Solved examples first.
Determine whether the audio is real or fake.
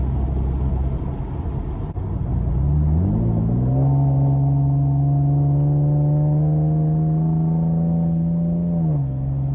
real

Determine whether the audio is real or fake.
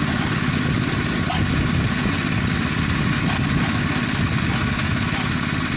real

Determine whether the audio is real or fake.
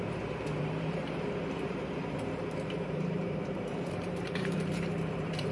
fake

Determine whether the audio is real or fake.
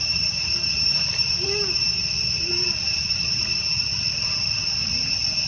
fake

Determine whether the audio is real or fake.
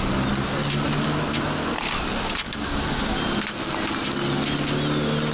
real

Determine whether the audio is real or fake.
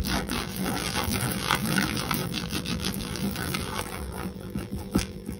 fake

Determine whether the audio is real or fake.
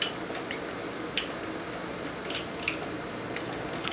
real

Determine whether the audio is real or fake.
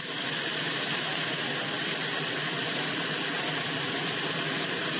fake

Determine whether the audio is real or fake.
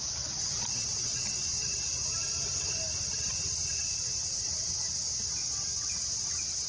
real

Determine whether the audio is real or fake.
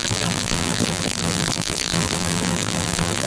fake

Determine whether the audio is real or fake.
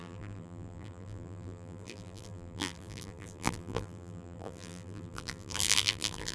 fake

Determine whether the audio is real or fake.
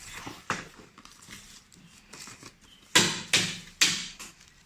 real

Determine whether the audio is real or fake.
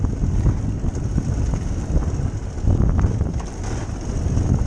real